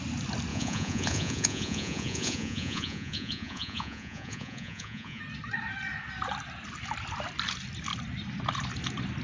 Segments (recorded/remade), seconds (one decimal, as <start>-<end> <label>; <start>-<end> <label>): 0.0-0.5 recorded; 0.5-5.2 remade; 5.2-9.2 recorded